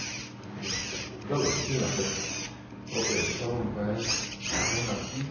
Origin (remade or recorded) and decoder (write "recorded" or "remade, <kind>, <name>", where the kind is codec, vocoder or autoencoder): recorded